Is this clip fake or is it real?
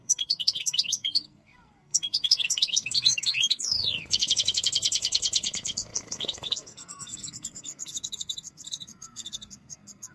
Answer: fake